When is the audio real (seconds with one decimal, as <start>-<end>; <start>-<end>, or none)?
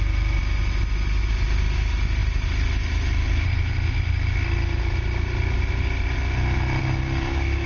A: 0.0-7.7